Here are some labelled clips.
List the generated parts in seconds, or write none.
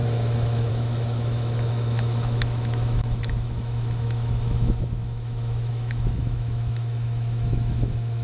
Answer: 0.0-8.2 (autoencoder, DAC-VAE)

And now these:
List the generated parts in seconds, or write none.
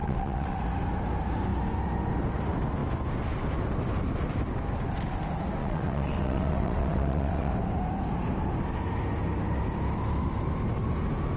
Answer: 0.0-0.6 (vocoder, WaveNeXt); 5.6-7.5